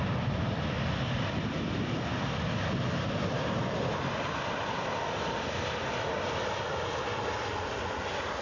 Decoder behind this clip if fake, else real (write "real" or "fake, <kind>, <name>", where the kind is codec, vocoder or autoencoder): real